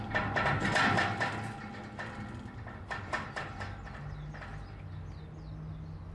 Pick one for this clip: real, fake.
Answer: real